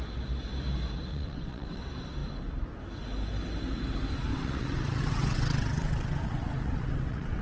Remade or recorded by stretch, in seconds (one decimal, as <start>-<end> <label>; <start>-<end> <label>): 0.0-1.1 recorded; 1.1-1.8 remade; 1.8-4.3 recorded; 4.3-7.4 remade